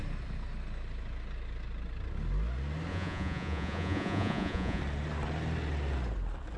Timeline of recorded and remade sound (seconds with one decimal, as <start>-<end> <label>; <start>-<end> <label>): 0.0-2.9 recorded; 2.9-4.8 remade; 4.8-6.6 recorded